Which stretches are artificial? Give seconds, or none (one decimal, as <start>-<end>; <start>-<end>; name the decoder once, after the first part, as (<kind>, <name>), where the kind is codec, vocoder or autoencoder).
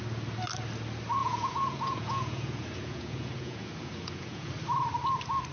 1.2-4.5 (vocoder, Vocos)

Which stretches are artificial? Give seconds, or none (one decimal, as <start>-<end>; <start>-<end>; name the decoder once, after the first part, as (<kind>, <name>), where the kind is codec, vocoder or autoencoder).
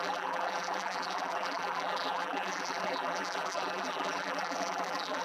0.0-5.2 (vocoder, BigVGAN v2)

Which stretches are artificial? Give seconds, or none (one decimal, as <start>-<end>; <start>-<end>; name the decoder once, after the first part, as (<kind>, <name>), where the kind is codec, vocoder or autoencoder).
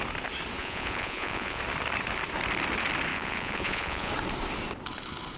0.6-1.6 (vocoder, Vocos); 3.1-4.1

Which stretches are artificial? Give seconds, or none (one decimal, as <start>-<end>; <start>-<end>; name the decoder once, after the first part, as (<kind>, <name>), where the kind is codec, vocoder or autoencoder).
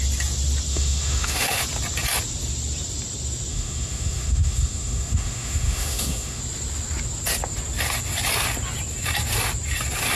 0.7-1.6 (autoencoder, DAC-VAE); 3.5-6.4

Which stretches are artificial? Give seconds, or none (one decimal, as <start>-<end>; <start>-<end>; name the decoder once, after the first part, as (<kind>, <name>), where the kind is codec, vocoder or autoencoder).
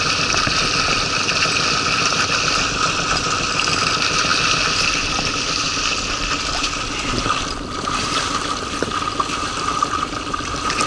none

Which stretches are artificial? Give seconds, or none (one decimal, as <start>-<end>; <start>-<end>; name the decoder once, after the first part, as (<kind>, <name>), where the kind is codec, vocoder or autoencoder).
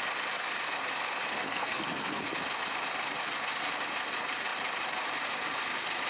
1.4-2.2 (codec, SNAC)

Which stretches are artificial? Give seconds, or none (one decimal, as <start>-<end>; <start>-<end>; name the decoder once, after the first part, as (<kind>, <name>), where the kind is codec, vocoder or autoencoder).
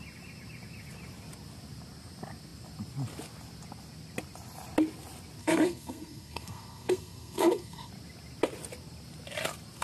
5.4-7.9 (codec, SNAC)